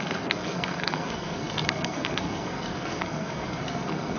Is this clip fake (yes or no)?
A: yes